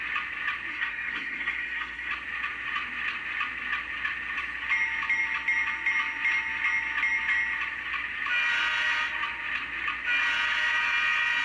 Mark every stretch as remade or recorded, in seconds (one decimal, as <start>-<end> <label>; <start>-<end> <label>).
0.0-0.7 recorded; 0.7-2.1 remade; 2.1-11.4 recorded